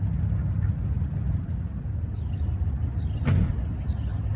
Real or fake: real